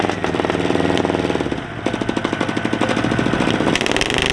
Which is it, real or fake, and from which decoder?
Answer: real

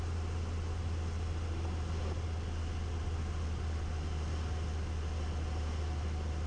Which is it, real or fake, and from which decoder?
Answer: real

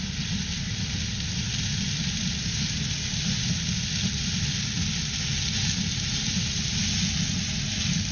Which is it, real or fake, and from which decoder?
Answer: real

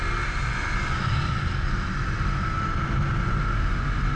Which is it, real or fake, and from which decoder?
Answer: real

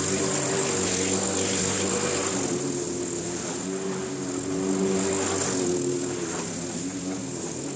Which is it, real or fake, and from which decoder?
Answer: real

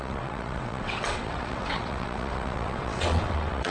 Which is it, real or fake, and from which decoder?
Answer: fake, vocoder, WaveNeXt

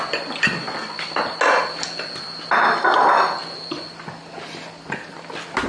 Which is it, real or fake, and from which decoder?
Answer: real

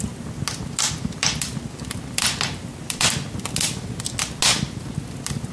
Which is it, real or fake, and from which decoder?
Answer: real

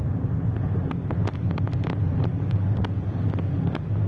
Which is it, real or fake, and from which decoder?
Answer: real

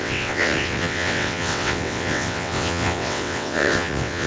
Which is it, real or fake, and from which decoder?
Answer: fake, vocoder, WaveNeXt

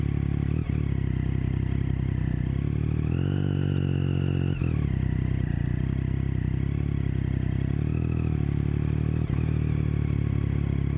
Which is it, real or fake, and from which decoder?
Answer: real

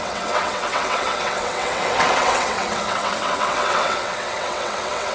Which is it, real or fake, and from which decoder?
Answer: fake, vocoder, WaveNeXt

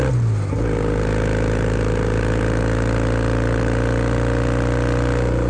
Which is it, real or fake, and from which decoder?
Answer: real